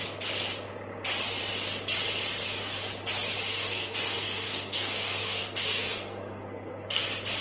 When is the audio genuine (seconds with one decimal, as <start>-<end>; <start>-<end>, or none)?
0.0-3.5; 7.0-7.4